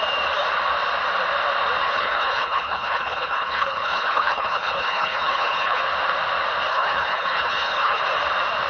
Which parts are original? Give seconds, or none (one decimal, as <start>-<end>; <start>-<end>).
0.0-1.8; 5.8-6.7; 8.0-8.7